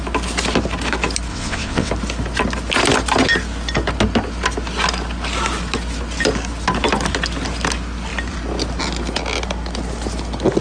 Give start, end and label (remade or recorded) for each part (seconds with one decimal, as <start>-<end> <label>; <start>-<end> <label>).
0.0-1.3 recorded; 1.3-1.9 remade; 1.9-10.6 recorded